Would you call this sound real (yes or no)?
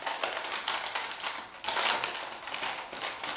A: yes